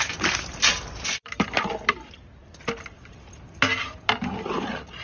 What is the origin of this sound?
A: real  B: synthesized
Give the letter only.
B